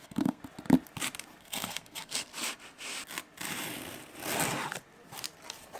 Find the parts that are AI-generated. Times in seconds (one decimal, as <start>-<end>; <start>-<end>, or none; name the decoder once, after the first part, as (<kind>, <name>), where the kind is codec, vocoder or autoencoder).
0.0-0.4 (codec, SNAC); 1.4-2.3